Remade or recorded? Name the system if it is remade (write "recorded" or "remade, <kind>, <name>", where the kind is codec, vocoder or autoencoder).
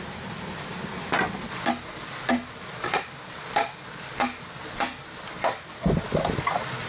recorded